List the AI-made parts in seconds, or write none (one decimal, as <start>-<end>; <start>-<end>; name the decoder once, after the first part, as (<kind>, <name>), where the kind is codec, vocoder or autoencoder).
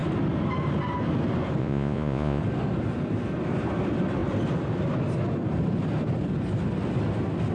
1.6-2.4 (vocoder, Vocos)